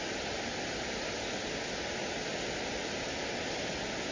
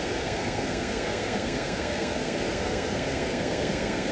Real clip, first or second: first